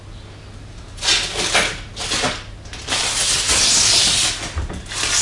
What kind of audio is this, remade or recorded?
recorded